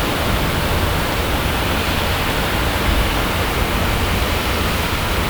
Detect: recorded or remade remade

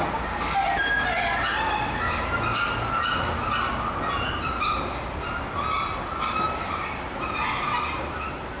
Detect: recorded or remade recorded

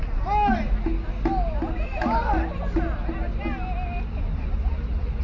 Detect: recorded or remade recorded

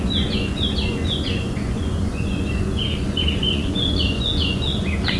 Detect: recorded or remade remade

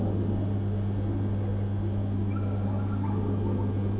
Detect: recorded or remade recorded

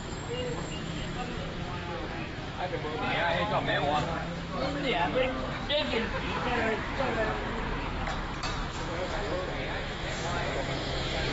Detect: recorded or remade remade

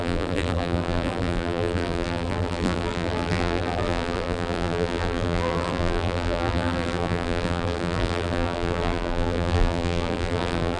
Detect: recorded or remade remade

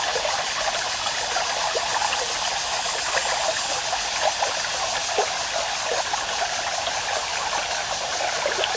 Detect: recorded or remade recorded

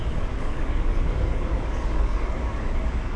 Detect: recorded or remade remade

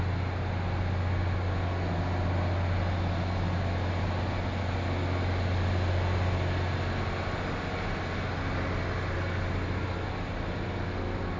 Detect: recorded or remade recorded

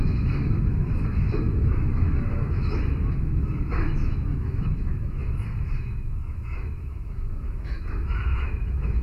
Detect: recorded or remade remade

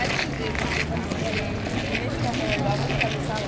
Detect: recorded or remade recorded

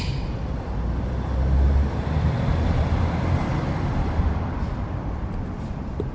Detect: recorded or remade recorded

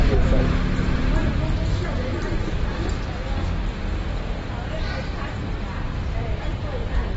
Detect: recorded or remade recorded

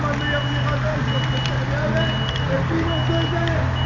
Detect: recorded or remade recorded